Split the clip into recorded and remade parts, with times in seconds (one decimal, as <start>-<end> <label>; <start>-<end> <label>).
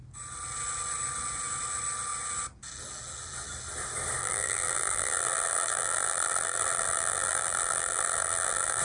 0.0-4.2 recorded; 4.2-8.8 remade